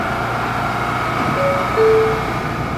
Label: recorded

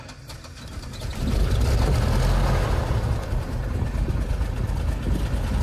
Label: recorded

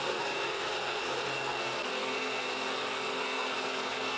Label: remade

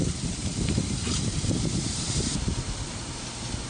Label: remade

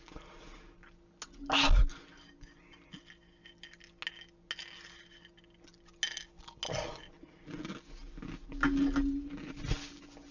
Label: recorded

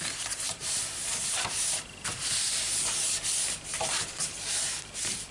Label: remade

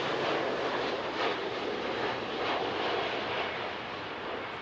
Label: recorded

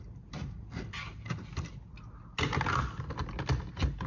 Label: recorded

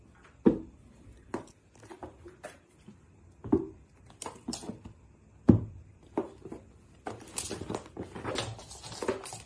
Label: recorded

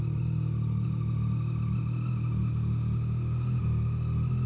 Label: recorded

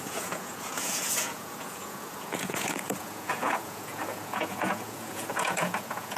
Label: remade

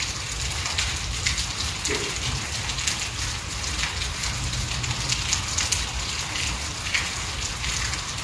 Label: recorded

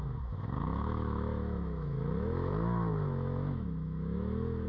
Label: remade